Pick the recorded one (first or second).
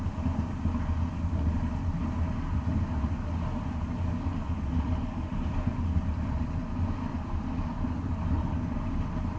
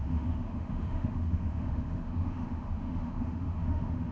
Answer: first